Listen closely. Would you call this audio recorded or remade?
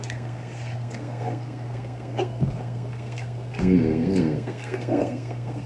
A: remade